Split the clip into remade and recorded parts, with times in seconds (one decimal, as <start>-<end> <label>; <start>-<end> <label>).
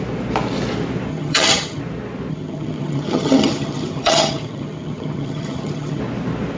0.0-1.1 recorded; 1.1-1.8 remade; 1.8-2.3 recorded; 2.3-6.0 remade; 6.0-6.6 recorded